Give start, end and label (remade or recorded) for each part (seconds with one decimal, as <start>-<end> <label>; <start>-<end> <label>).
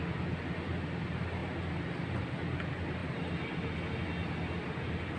0.0-5.2 recorded